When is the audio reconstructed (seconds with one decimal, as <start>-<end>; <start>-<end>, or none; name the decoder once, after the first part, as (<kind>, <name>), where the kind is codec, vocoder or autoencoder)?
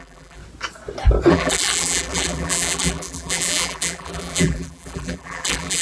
0.0-0.4 (vocoder, BigVGAN v2); 1.3-5.8